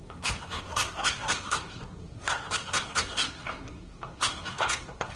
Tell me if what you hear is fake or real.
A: fake